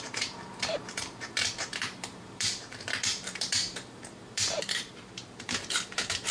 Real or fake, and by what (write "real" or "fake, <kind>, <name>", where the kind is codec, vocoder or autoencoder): fake, vocoder, BigVGAN v2